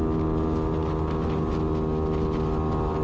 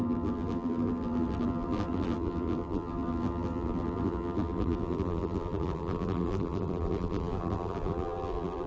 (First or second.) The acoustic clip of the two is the first